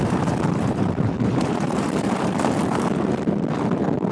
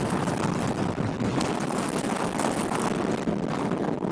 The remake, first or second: first